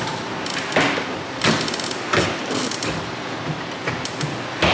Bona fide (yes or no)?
yes